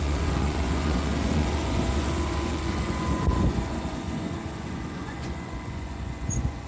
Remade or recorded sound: remade